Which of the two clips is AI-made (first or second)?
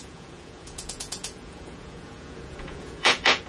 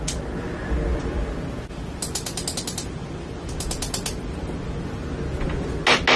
first